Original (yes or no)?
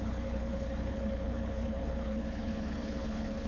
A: no